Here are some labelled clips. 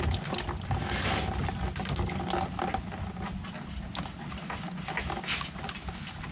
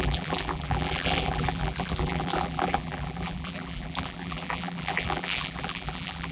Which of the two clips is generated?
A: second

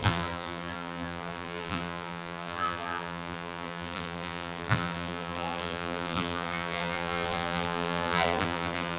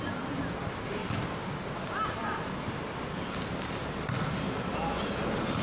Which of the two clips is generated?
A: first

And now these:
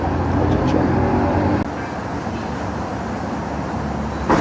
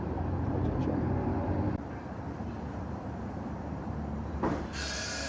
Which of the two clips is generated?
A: second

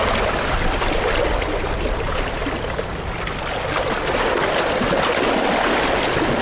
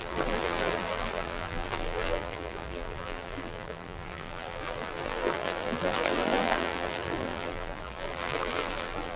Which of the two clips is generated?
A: second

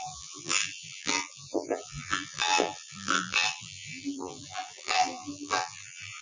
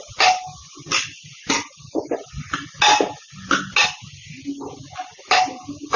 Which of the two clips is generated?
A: first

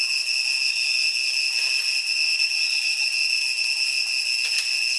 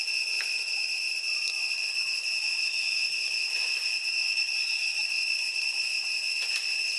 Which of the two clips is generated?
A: second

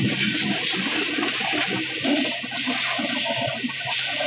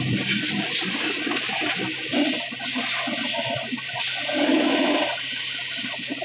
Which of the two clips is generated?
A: first